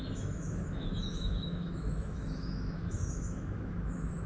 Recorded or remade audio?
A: remade